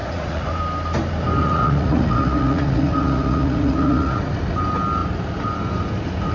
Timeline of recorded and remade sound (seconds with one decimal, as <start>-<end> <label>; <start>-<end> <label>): 0.0-0.6 remade; 0.6-1.4 recorded; 1.4-4.2 remade; 4.2-6.3 recorded